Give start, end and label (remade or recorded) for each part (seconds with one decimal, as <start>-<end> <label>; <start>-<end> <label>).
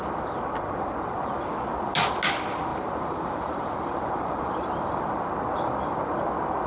0.0-2.7 recorded; 2.7-5.0 remade; 5.0-6.7 recorded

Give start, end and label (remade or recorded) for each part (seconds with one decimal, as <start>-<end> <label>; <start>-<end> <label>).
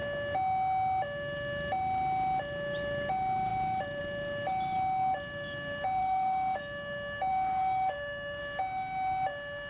0.0-6.0 recorded; 6.0-6.6 remade; 6.6-7.3 recorded; 7.3-8.4 remade; 8.4-9.7 recorded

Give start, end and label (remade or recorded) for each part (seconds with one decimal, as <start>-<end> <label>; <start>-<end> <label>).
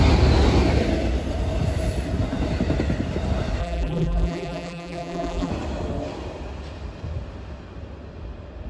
0.0-3.6 recorded; 3.6-5.5 remade; 5.5-8.7 recorded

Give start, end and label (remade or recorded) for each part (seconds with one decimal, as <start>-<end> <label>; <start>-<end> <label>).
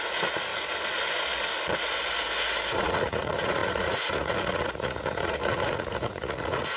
0.0-0.5 remade; 0.5-2.7 recorded; 2.7-6.8 remade